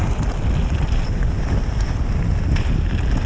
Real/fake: real